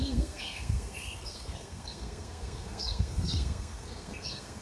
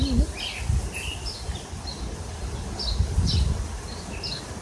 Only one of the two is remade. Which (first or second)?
first